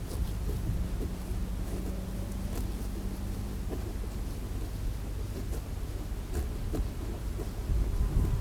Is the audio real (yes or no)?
yes